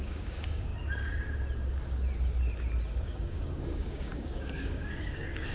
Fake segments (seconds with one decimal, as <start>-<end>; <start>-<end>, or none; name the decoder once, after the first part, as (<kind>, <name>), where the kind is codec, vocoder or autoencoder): 0.0-0.7 (codec, DAC); 3.0-5.5